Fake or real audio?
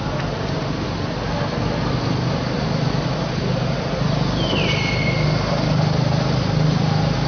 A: real